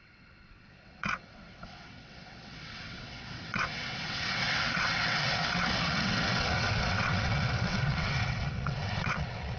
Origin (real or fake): fake